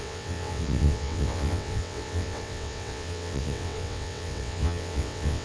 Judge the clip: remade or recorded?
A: remade